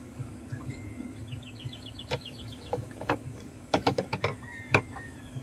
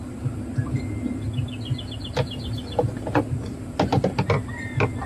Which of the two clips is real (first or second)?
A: second